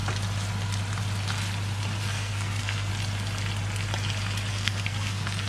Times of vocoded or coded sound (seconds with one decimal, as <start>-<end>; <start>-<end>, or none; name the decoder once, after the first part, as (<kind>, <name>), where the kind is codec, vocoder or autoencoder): 2.0-2.9 (codec, SNAC); 4.5-5.5